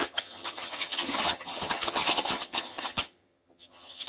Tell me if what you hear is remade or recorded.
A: remade